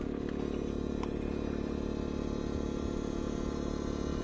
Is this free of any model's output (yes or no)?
yes